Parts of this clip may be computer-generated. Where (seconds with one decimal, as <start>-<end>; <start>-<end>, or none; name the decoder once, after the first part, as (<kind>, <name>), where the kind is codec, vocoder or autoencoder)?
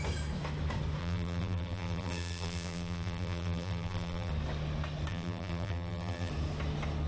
1.0-4.3 (vocoder, BigVGAN v2); 5.1-6.3